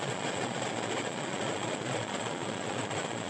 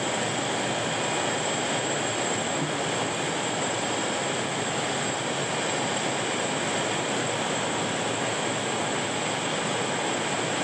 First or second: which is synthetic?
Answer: first